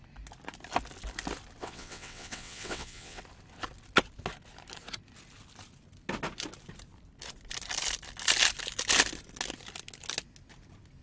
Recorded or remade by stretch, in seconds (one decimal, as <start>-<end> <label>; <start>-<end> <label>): 0.0-1.6 recorded; 1.6-3.2 remade; 3.2-11.0 recorded